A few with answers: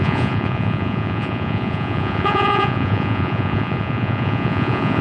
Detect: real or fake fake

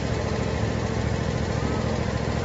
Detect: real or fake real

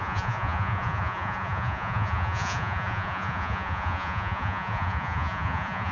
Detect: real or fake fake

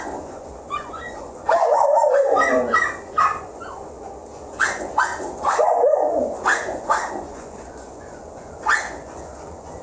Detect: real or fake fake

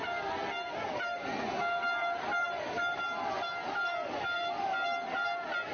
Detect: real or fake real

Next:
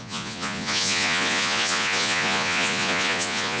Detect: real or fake fake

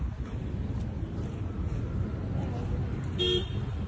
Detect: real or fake real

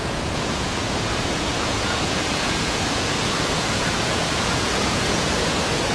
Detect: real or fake fake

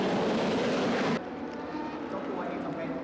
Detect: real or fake real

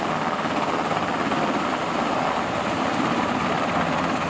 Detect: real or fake real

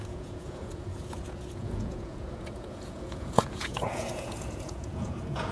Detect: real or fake fake